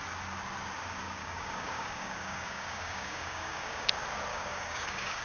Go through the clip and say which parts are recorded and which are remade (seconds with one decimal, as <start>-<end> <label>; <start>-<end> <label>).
0.0-1.2 recorded; 1.2-3.9 remade; 3.9-4.3 recorded; 4.3-5.2 remade